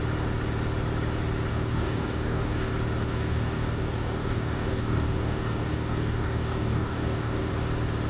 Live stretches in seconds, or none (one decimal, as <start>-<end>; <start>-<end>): 0.0-1.5; 2.7-3.1; 7.5-8.1